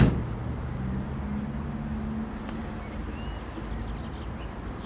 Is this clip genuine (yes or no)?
yes